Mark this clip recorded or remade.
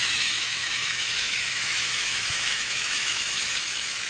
remade